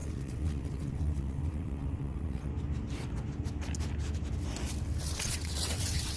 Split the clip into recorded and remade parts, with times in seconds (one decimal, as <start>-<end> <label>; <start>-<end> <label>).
0.0-2.5 remade; 2.5-5.0 recorded; 5.0-6.2 remade